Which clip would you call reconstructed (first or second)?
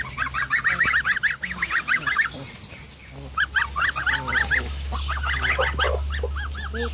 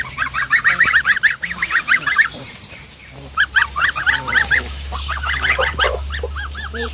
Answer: second